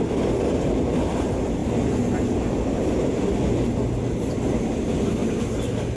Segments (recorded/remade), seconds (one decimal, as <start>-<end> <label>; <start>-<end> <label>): 0.0-5.2 recorded; 5.2-6.0 remade